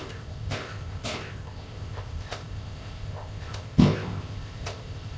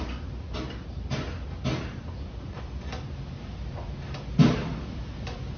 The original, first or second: second